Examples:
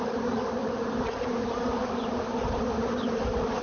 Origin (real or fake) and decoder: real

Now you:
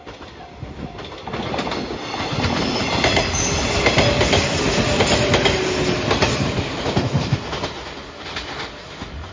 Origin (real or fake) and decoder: real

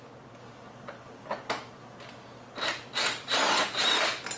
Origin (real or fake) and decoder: real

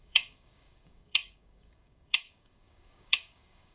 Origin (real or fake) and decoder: fake, codec, DAC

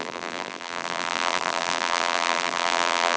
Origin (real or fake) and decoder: fake, vocoder, BigVGAN v2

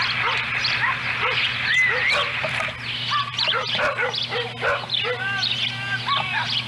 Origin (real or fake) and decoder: real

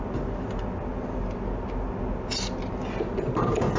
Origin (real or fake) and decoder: real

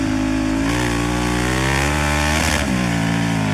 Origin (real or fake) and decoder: real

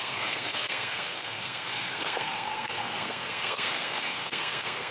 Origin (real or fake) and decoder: fake, codec, SNAC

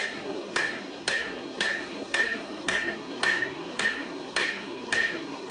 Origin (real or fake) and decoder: fake, codec, SNAC